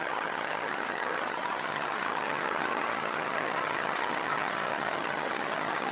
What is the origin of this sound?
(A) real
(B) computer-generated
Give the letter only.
B